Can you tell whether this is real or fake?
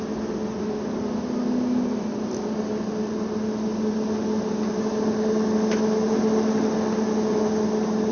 real